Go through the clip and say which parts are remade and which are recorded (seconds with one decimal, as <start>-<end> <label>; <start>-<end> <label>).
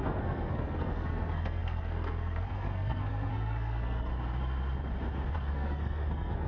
0.0-4.1 remade; 4.1-5.5 recorded; 5.5-6.5 remade